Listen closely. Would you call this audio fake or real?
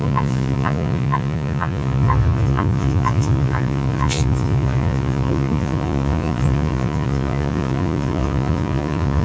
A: fake